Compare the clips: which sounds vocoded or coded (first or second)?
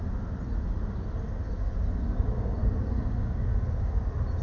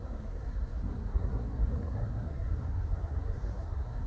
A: second